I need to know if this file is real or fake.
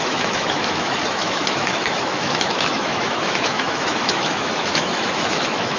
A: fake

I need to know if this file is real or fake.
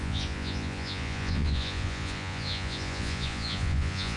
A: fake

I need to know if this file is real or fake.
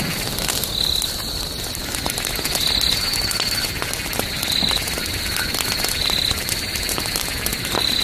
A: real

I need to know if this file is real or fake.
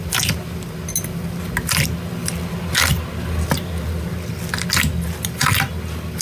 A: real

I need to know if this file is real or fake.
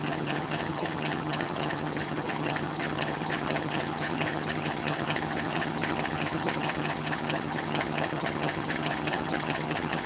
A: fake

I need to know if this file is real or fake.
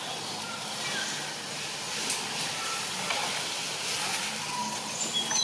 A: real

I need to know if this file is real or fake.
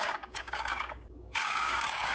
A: fake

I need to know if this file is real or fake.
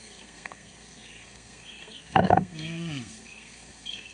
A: fake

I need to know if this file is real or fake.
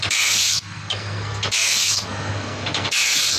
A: fake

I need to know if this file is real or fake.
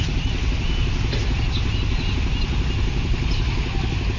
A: real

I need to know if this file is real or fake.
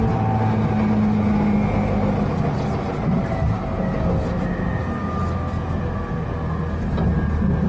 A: real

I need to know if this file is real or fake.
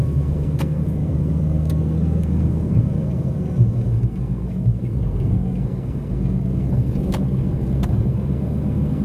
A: fake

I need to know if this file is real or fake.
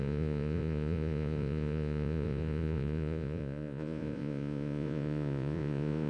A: fake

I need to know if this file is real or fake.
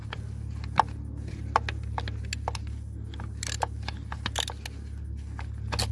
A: real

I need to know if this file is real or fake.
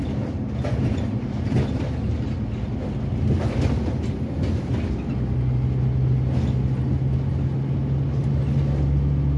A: real